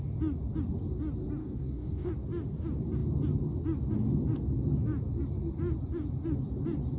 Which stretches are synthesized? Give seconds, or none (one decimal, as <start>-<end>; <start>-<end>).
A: 1.4-2.1